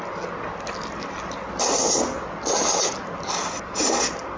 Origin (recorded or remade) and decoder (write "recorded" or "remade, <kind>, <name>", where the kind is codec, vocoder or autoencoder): recorded